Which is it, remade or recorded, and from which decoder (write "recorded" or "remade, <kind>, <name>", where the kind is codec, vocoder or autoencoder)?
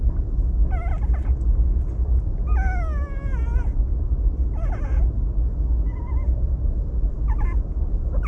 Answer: recorded